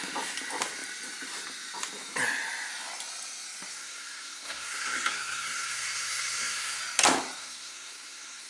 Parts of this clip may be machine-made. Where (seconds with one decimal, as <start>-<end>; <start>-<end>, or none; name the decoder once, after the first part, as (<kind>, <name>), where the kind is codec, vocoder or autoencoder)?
3.7-6.8 (codec, SNAC); 7.4-8.5